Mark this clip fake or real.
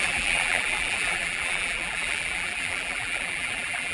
fake